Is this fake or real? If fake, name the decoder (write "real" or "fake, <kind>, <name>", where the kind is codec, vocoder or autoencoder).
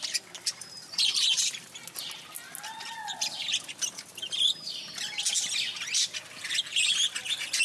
real